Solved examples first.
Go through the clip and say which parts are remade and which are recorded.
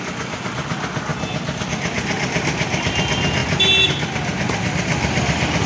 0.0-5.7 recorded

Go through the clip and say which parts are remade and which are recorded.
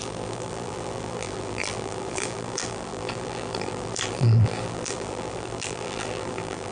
0.0-6.7 remade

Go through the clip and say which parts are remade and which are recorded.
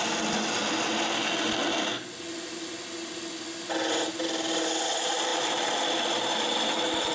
0.0-5.3 recorded; 5.3-6.2 remade; 6.2-7.1 recorded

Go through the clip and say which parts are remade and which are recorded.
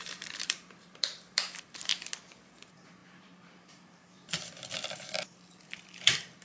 0.0-1.9 remade; 1.9-2.4 recorded; 2.4-6.4 remade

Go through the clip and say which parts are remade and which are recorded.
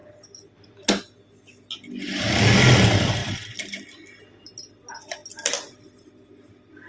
0.0-3.2 recorded; 3.2-4.2 remade; 4.2-5.2 recorded; 5.2-5.8 remade; 5.8-6.9 recorded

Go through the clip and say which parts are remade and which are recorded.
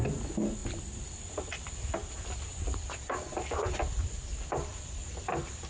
0.0-0.6 recorded; 0.6-1.3 remade; 1.3-2.5 recorded; 2.5-3.7 remade; 3.7-4.7 recorded; 4.7-5.7 remade